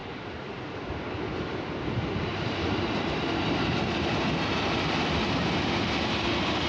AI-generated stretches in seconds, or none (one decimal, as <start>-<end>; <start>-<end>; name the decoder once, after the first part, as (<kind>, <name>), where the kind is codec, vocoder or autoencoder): none